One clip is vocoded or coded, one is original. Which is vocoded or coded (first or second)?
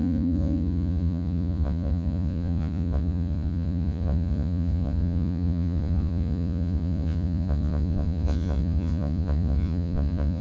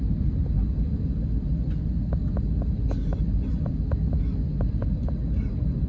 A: first